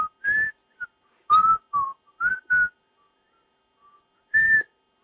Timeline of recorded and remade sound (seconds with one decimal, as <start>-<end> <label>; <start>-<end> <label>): 0.0-5.0 recorded